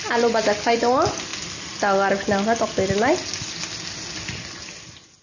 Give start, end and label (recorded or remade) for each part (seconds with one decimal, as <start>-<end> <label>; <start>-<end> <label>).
0.0-5.2 recorded